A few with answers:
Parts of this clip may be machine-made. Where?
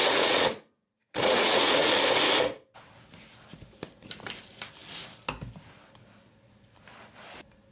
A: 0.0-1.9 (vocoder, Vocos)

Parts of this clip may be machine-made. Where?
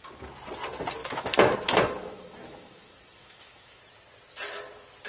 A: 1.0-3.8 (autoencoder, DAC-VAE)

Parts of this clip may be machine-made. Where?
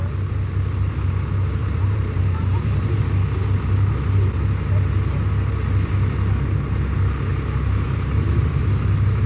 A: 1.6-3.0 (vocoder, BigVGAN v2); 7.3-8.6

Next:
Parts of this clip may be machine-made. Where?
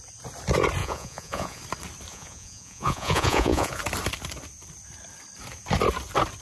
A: 0.8-1.6 (vocoder, Vocos); 2.1-3.8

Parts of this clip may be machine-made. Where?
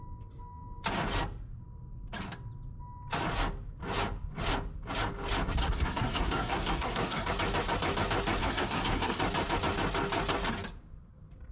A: 5.6-7.3 (codec, SNAC); 8.4-9.2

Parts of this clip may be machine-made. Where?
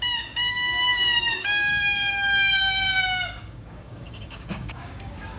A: 0.0-5.4 (codec, DAC)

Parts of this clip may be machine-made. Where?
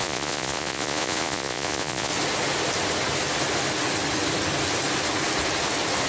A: 0.0-2.1 (vocoder, Vocos)